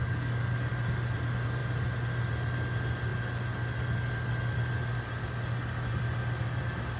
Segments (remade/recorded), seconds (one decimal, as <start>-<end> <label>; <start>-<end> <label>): 0.0-0.7 remade; 0.7-7.0 recorded